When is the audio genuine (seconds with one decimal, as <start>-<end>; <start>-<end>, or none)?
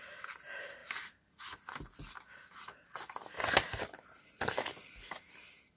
0.0-5.8